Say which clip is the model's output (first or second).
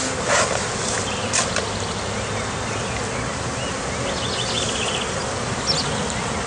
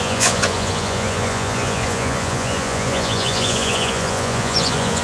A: second